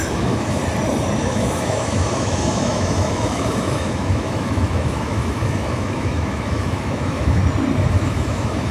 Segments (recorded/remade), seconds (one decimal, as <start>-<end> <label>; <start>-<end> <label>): 0.0-0.6 remade; 0.6-1.2 recorded; 1.2-7.4 remade; 7.4-7.9 recorded; 7.9-8.7 remade